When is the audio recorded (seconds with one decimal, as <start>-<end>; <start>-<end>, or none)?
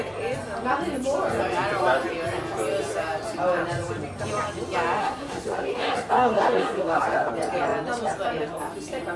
0.0-5.0; 7.3-9.2